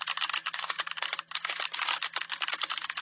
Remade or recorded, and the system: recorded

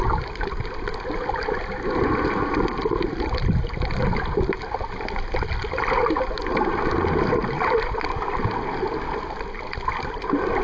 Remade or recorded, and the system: recorded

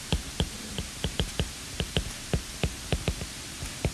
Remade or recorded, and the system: remade, vocoder, BigVGAN v2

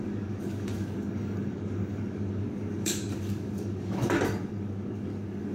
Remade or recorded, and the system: remade, codec, DAC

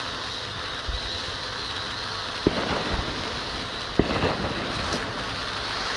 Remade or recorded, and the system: recorded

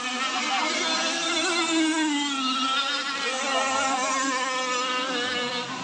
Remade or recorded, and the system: recorded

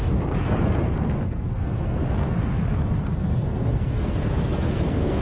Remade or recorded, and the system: remade, codec, SNAC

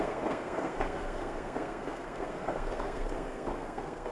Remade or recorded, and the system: remade, codec, SNAC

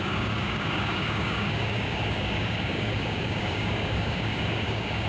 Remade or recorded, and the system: remade, codec, DAC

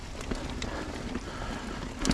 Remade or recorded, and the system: recorded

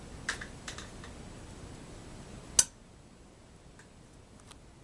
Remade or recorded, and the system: recorded